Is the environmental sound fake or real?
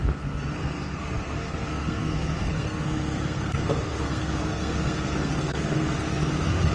fake